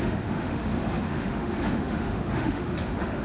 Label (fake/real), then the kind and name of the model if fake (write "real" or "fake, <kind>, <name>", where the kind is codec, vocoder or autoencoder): fake, autoencoder, DAC-VAE